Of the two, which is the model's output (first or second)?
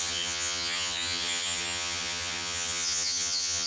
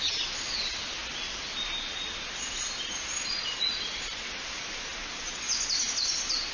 first